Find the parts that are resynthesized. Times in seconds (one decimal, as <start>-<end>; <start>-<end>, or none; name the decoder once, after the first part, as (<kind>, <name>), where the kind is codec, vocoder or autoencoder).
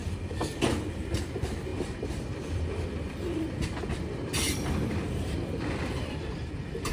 1.1-6.9 (vocoder, BigVGAN v2)